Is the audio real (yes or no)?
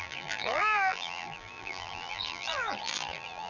no